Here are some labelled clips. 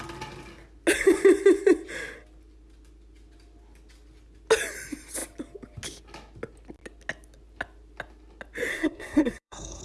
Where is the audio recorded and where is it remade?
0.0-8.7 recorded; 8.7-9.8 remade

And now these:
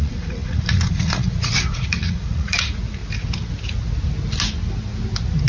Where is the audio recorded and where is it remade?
0.0-3.0 remade; 3.0-5.5 recorded

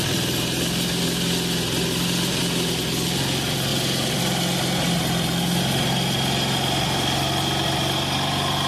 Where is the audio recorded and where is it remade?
0.0-8.7 recorded

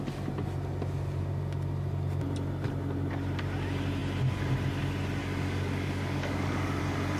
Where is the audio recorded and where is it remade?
0.0-5.2 recorded; 5.2-6.8 remade; 6.8-7.2 recorded

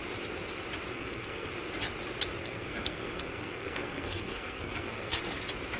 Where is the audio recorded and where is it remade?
0.0-0.9 recorded; 0.9-1.5 remade; 1.5-2.4 recorded; 2.4-5.2 remade; 5.2-5.8 recorded

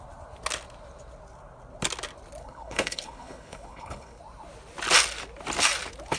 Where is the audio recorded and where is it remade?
0.0-2.4 recorded; 2.4-4.2 remade; 4.2-6.2 recorded